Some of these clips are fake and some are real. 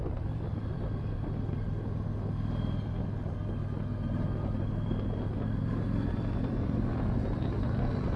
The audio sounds real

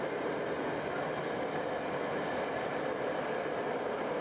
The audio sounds real